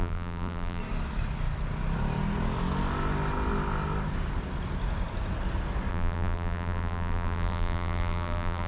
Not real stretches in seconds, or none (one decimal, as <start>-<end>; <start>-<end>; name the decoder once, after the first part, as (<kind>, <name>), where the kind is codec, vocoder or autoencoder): 0.0-0.8 (vocoder, BigVGAN v2); 5.9-8.7

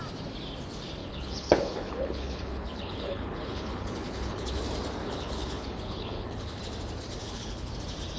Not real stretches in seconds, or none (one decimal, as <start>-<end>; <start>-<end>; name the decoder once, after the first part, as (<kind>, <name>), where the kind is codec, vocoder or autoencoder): 1.0-4.6 (codec, HILCodec); 5.0-6.6; 7.2-7.7

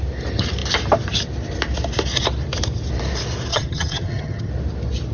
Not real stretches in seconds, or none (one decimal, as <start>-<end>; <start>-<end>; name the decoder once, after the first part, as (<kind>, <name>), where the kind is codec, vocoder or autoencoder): 3.5-4.5 (vocoder, HiFi-GAN)

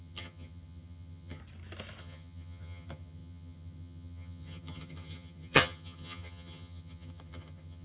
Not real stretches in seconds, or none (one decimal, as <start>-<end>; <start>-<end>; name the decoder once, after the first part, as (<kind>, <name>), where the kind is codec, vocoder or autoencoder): 0.0-1.4 (vocoder, HiFi-GAN); 2.0-7.8

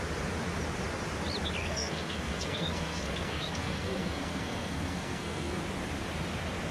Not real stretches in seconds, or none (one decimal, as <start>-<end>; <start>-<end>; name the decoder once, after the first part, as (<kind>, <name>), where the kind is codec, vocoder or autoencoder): 1.6-5.6 (codec, SNAC)

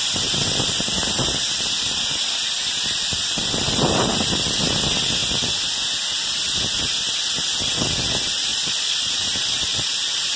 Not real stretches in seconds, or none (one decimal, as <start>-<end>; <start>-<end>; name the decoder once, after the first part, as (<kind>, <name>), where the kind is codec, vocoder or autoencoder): 8.5-9.1 (vocoder, Vocos)

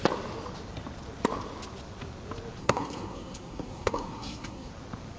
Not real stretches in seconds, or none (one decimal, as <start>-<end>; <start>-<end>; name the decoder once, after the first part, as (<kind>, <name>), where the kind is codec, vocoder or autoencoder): 2.6-4.7 (codec, SNAC)